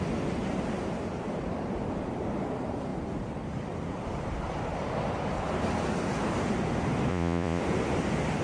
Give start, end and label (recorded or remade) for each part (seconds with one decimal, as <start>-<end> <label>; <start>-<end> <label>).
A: 0.0-7.1 recorded; 7.1-7.6 remade; 7.6-8.4 recorded